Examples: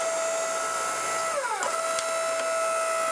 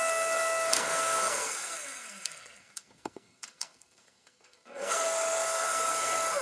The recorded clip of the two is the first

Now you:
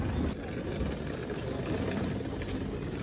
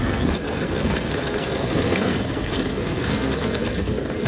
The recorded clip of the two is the first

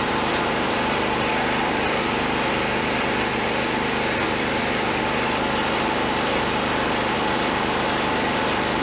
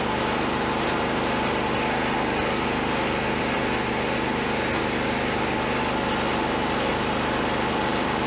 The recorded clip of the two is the second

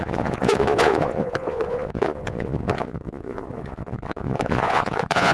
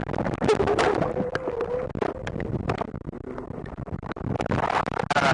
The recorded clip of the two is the second